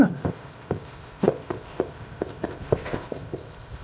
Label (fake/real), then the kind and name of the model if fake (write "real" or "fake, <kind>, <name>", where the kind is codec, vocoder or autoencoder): fake, codec, ZipCodec